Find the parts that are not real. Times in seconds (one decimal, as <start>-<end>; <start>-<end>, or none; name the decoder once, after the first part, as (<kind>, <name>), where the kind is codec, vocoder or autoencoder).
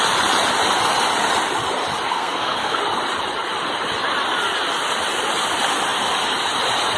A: 2.1-2.8 (codec, SNAC)